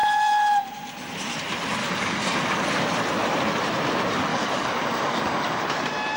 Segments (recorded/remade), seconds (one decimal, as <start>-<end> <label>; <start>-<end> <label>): 0.0-1.8 recorded; 1.8-2.5 remade; 2.5-4.3 recorded; 4.3-5.6 remade; 5.6-6.2 recorded